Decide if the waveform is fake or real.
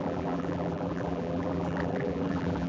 fake